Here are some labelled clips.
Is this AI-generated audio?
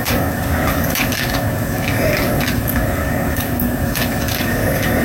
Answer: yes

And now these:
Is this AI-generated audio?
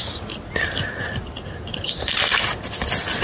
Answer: no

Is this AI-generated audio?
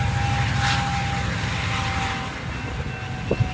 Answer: no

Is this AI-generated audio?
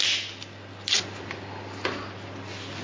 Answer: no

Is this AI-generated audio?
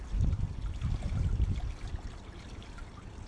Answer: yes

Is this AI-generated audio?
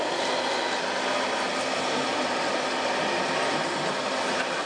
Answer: no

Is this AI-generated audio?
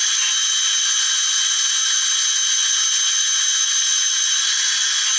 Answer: no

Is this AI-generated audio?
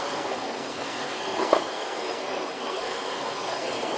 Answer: yes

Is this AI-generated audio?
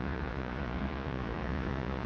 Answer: yes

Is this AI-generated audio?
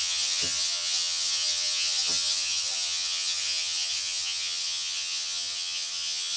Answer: yes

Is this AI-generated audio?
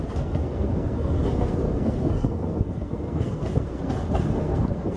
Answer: yes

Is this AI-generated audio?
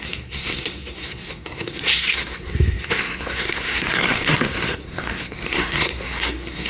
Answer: yes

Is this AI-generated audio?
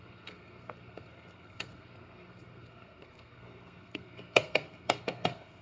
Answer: yes